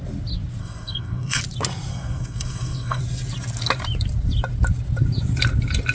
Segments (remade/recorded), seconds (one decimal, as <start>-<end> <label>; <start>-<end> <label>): 0.0-0.6 recorded; 0.6-1.4 remade; 1.4-1.9 recorded; 1.9-3.0 remade; 3.0-5.9 recorded